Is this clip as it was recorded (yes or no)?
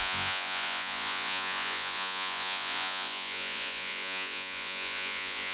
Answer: no